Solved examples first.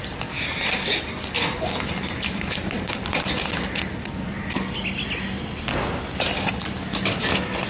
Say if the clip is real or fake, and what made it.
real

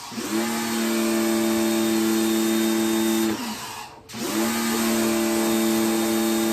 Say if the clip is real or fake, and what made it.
real